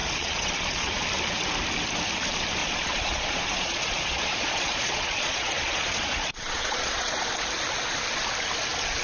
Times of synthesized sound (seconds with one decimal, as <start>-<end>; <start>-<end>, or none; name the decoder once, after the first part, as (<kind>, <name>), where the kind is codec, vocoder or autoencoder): 0.0-1.0 (vocoder, Vocos); 2.6-7.2